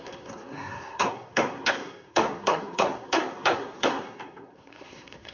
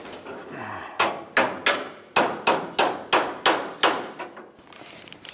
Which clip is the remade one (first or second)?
first